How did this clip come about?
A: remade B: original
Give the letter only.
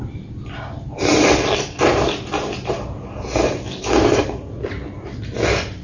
B